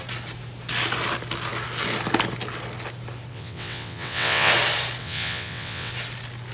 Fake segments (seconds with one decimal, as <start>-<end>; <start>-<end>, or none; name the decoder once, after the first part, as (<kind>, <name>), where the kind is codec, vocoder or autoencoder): 3.3-4.5 (vocoder, WaveNeXt); 5.0-5.9